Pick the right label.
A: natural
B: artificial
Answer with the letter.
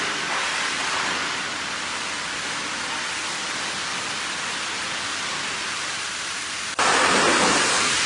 A